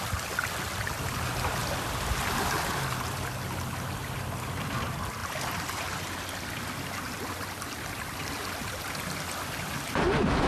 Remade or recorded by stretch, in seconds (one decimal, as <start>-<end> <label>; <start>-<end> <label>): 0.0-10.5 recorded

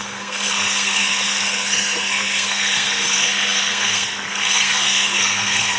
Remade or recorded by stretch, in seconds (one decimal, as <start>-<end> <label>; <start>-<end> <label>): 0.0-5.8 remade

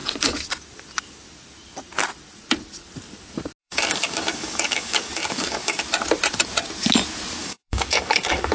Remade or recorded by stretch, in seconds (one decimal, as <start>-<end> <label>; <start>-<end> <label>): 0.0-3.6 recorded; 3.6-5.8 remade; 5.8-7.4 recorded; 7.4-8.5 remade